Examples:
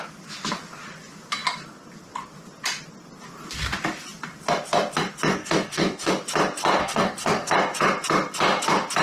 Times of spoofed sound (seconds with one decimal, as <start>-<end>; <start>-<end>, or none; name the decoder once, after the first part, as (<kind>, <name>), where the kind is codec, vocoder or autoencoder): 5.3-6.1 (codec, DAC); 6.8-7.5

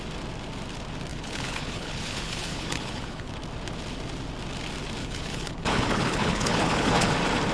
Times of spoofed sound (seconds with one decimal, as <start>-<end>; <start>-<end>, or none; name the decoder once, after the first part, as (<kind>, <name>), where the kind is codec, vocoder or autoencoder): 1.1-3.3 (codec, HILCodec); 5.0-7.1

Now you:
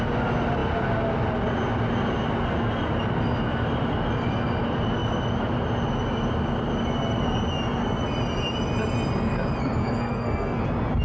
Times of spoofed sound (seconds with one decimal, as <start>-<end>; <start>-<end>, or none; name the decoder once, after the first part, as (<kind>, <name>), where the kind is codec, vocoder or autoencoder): 9.8-10.6 (codec, SNAC)

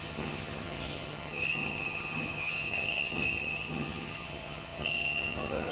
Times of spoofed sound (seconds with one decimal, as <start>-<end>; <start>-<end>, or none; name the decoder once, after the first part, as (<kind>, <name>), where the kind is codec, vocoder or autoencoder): 0.0-5.7 (vocoder, HiFi-GAN)

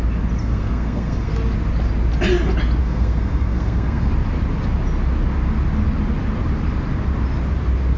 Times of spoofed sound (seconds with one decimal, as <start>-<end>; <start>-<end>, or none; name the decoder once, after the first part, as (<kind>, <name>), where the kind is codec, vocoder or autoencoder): 0.4-1.3 (codec, SNAC); 2.8-4.1

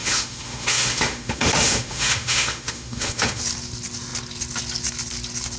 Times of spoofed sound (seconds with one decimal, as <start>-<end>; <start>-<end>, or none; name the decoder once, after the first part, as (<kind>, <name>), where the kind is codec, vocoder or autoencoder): 0.0-3.4 (autoencoder, DAC-VAE)